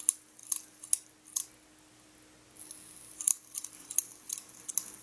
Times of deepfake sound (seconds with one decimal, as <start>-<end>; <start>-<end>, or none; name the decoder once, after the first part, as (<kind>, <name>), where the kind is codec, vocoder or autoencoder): none

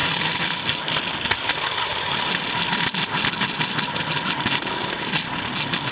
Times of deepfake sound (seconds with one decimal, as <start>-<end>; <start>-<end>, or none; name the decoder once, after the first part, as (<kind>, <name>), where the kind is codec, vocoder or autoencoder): none

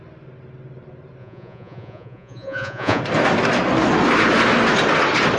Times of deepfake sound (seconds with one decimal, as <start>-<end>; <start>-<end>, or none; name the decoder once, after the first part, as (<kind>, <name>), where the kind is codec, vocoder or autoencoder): 1.2-3.0 (vocoder, Vocos)

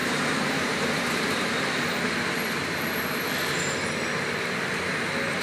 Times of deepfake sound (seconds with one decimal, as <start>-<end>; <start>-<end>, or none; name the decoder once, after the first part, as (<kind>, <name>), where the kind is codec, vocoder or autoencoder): none